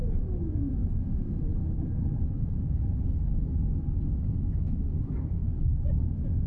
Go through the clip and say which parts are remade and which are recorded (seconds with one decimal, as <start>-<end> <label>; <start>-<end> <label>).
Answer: 0.0-1.6 recorded; 1.6-3.3 remade; 3.3-6.5 recorded